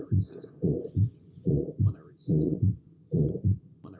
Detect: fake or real fake